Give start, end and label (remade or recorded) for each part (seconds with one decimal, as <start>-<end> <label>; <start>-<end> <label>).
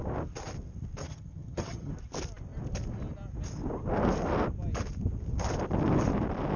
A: 0.0-1.0 recorded; 1.0-1.9 remade; 1.9-6.6 recorded